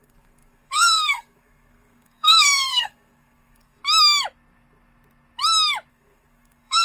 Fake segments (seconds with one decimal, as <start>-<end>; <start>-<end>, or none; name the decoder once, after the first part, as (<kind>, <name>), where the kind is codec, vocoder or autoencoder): 0.0-3.8 (codec, SNAC); 5.9-6.8